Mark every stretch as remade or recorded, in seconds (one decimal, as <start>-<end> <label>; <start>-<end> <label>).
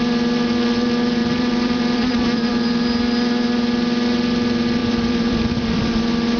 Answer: 0.0-1.2 recorded; 1.2-2.5 remade; 2.5-4.8 recorded; 4.8-6.0 remade; 6.0-6.4 recorded